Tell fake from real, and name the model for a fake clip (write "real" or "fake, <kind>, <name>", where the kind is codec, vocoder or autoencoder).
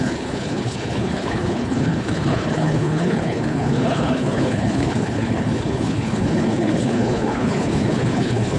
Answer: fake, codec, HILCodec